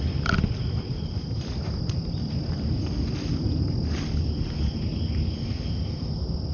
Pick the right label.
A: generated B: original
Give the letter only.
B